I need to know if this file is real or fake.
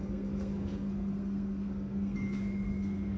fake